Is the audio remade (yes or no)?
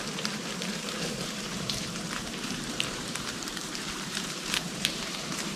yes